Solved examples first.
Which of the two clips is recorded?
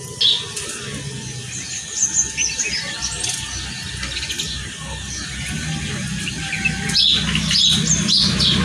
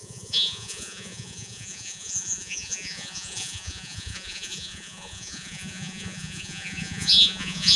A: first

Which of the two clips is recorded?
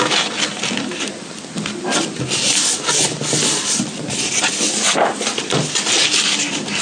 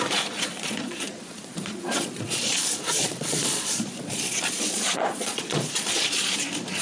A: first